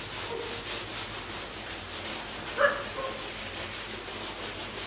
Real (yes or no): yes